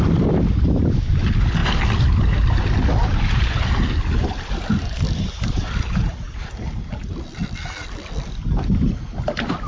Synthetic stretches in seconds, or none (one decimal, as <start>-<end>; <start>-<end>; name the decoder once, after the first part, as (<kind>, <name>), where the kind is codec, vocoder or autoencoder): none